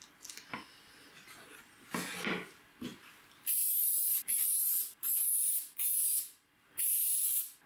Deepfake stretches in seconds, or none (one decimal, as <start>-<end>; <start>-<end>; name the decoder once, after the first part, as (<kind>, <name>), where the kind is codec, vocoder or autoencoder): 2.9-7.1 (vocoder, BigVGAN v2)